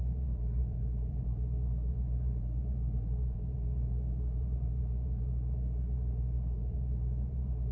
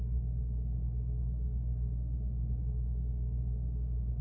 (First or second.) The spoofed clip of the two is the first